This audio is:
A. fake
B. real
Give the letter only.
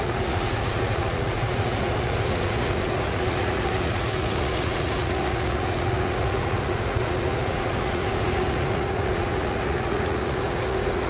A